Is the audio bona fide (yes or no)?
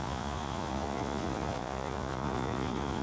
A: no